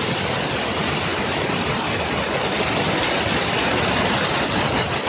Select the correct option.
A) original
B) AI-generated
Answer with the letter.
A